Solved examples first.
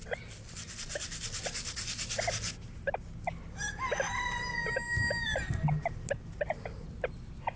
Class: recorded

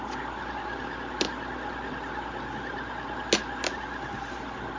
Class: recorded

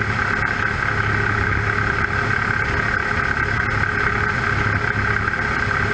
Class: recorded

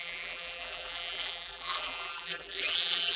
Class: remade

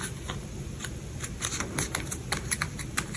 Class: recorded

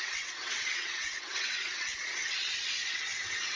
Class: remade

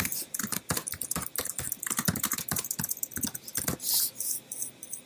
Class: recorded